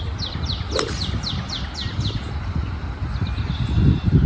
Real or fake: real